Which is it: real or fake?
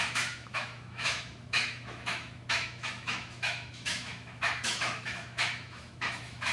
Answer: fake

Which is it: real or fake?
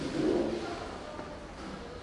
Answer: real